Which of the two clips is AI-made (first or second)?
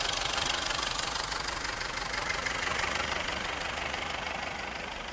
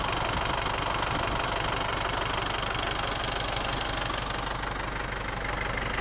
first